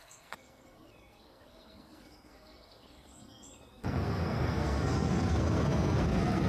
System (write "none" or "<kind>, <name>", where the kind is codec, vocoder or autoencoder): codec, SNAC